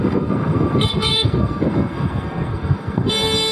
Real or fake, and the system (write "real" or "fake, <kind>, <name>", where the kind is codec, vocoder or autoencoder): fake, codec, SNAC